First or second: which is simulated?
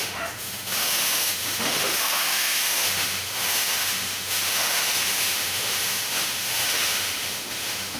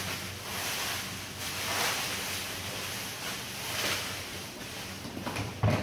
first